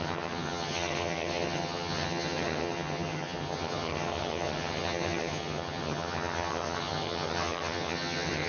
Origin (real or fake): fake